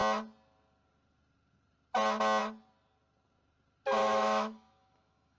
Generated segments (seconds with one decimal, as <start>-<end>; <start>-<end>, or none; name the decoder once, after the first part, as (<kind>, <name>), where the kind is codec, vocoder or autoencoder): 4.0-5.4 (autoencoder, DAC-VAE)